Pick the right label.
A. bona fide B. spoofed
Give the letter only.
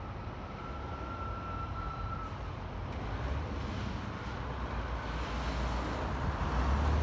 A